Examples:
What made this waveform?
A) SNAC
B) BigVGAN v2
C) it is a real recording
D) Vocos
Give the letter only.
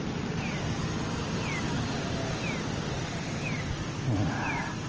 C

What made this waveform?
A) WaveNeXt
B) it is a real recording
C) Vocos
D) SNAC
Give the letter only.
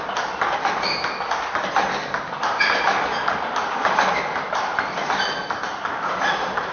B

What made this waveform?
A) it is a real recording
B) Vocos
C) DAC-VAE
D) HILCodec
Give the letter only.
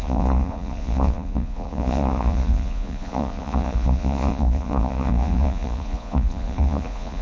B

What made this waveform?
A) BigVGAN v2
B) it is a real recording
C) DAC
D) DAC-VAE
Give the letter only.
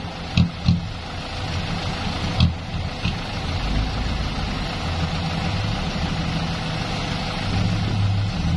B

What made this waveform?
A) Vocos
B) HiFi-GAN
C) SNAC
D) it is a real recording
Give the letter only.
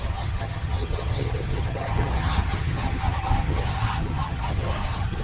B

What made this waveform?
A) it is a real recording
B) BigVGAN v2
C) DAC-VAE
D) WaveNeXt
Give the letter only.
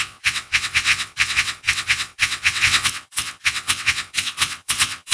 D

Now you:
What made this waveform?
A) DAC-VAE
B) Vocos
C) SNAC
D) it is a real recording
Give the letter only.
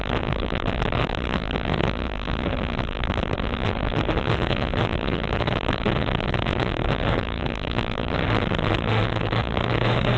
A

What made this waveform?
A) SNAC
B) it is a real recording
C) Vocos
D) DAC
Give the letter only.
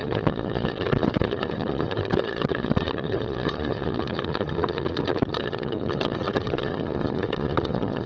C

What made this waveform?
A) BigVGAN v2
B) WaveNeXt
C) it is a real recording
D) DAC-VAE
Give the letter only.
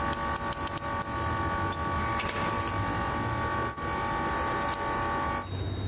C